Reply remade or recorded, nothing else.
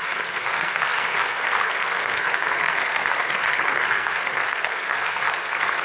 remade